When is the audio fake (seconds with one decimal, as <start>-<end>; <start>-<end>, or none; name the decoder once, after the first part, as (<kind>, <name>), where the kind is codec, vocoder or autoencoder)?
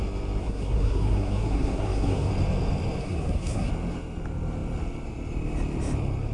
0.4-2.3 (codec, SNAC); 3.0-3.7